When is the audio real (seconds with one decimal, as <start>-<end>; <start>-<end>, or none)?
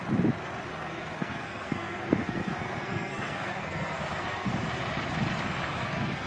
0.0-0.7; 4.5-5.6